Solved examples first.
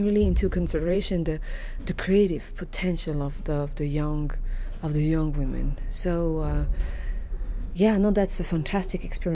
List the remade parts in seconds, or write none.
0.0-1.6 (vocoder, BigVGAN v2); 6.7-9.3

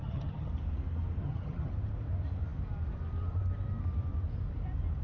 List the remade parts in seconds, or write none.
0.0-0.5 (vocoder, HiFi-GAN); 1.2-1.7

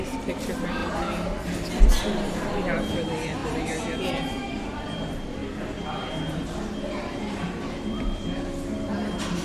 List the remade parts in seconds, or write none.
0.0-0.8 (vocoder, BigVGAN v2); 1.8-5.4; 6.1-9.4

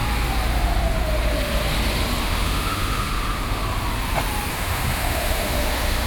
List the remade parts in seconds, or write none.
2.2-3.6 (autoencoder, DAC-VAE); 4.5-6.1

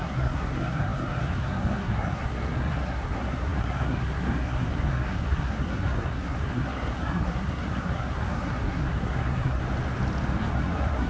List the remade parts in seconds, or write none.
0.0-9.6 (codec, SNAC); 10.4-11.1

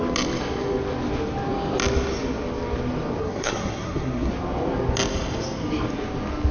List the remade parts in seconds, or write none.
3.2-4.3 (codec, SNAC)

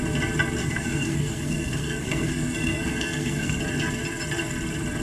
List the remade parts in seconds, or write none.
0.6-3.6 (codec, SNAC)